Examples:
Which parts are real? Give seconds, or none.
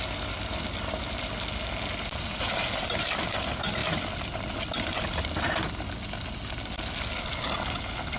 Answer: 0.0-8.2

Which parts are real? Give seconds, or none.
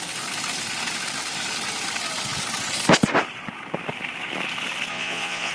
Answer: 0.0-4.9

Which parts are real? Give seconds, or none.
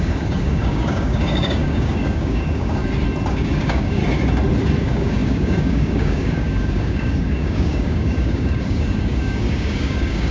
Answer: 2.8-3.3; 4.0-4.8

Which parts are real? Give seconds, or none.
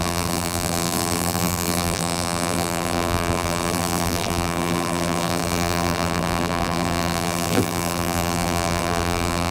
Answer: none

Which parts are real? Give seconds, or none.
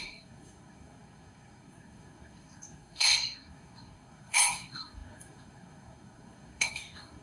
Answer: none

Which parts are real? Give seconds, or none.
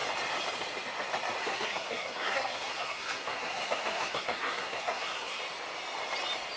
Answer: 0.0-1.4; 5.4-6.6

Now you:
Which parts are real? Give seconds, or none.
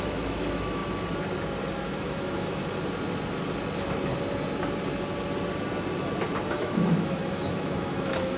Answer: 0.8-1.8; 2.6-6.5